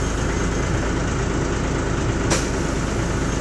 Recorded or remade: recorded